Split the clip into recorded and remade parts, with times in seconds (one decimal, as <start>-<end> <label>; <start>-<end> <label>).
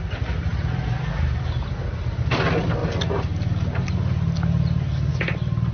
0.0-5.7 recorded